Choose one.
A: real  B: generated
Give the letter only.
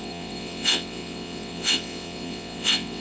B